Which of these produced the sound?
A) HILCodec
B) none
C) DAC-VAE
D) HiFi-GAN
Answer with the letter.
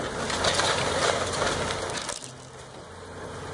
B